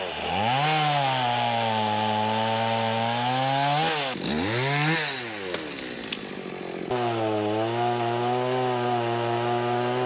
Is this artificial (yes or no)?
no